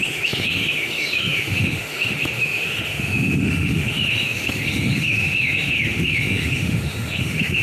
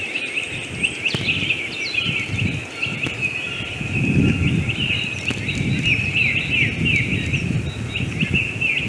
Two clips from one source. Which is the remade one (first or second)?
first